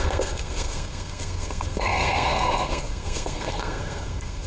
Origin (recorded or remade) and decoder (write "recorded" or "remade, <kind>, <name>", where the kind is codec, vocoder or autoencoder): remade, codec, SNAC